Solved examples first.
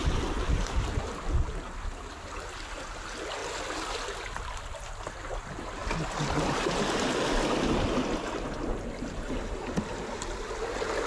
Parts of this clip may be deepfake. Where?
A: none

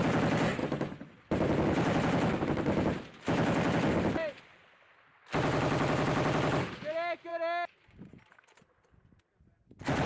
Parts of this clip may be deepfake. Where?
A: 0.6-4.4 (vocoder, BigVGAN v2)

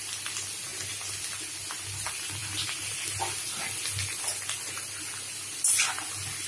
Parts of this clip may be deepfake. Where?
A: none

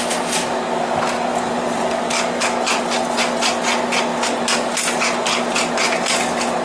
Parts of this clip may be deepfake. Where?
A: none

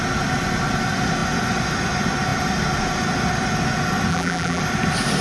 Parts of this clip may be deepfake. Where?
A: 4.1-4.6 (vocoder, BigVGAN v2)

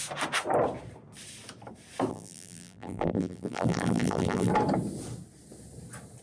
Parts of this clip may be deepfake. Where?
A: 2.1-4.5 (vocoder, BigVGAN v2)

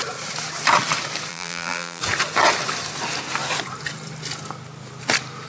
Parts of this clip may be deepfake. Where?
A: 1.3-2.0 (vocoder, BigVGAN v2)